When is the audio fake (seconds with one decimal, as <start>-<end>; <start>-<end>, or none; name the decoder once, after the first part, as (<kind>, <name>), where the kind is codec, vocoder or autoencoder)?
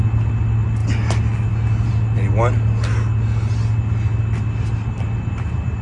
none